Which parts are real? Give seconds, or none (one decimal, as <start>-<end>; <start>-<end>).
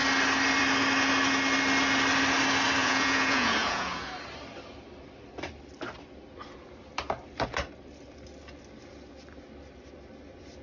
0.0-2.8; 4.1-10.6